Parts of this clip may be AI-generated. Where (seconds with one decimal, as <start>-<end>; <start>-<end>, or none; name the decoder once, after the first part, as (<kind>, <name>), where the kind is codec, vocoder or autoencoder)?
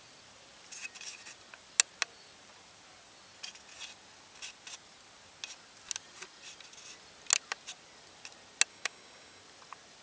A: 8.7-9.4 (codec, DAC)